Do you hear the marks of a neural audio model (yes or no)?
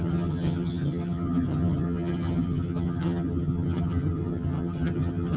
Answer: yes